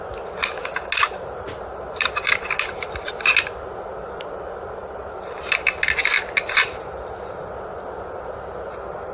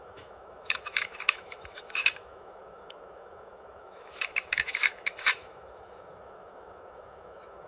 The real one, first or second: first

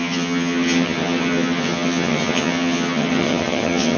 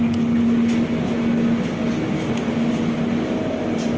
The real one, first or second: second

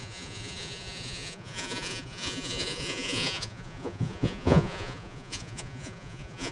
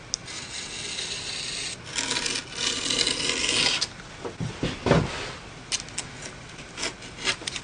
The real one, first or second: second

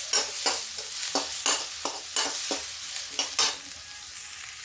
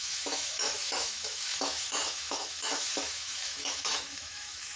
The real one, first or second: first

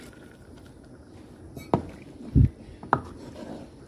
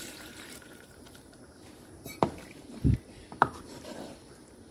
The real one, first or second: first